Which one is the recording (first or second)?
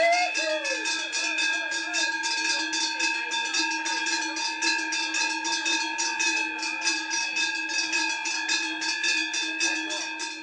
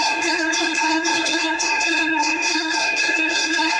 first